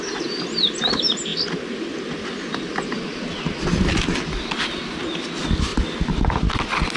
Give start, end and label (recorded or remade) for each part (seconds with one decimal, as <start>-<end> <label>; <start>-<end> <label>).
0.0-7.0 recorded